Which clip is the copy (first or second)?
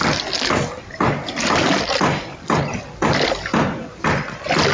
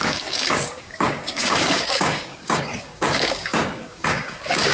second